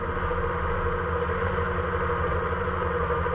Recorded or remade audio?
recorded